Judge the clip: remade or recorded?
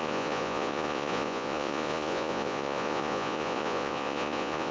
remade